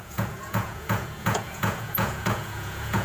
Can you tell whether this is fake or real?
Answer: fake